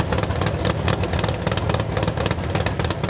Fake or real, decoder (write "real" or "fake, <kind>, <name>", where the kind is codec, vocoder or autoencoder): real